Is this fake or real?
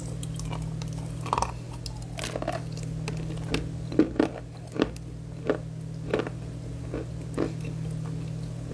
real